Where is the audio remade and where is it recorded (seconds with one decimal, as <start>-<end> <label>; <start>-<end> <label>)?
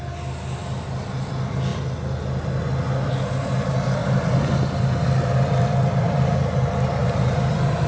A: 0.0-4.0 recorded; 4.0-6.4 remade; 6.4-7.0 recorded; 7.0-7.9 remade